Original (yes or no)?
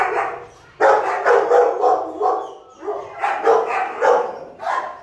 yes